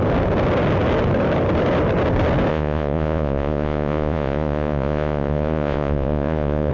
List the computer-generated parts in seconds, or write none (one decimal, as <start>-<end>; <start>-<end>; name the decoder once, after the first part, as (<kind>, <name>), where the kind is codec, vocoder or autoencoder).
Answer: 2.5-6.7 (vocoder, Vocos)